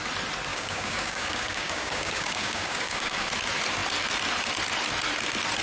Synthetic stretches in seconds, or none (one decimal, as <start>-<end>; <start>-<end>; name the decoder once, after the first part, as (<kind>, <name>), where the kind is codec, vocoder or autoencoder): 0.5-3.3 (codec, DAC)